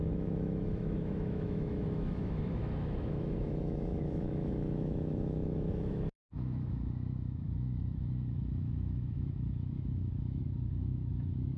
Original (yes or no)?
no